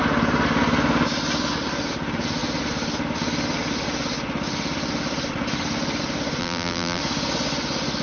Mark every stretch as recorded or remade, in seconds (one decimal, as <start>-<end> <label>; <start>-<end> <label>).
0.0-6.4 recorded; 6.4-7.0 remade; 7.0-8.0 recorded